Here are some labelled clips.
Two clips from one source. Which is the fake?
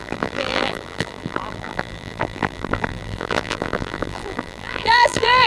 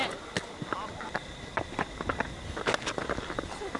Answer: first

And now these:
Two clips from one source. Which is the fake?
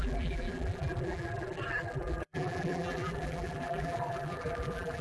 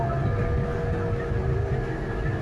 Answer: first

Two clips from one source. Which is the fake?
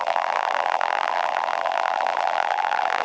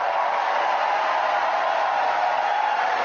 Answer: first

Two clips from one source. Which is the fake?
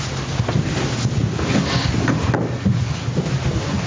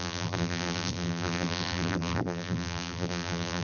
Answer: second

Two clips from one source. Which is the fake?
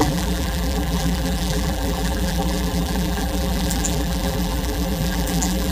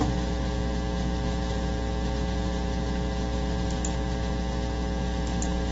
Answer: first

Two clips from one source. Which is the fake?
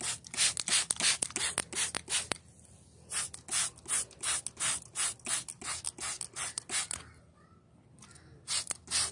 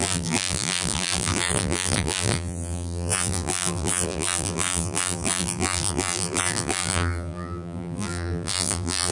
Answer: second